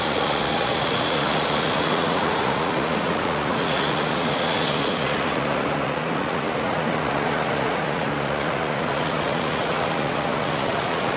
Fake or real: fake